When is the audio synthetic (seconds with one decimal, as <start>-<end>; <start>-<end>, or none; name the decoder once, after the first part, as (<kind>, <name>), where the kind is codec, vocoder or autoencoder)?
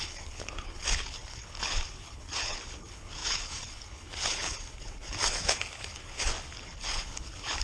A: 0.0-7.6 (codec, HILCodec)